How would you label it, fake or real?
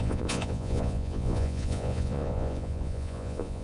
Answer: fake